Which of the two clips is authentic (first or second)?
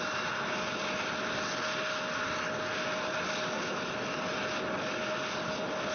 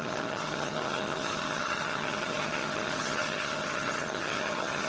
first